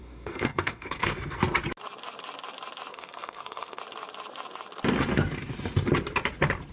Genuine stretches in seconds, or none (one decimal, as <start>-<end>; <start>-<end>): 1.4-2.9; 3.8-6.7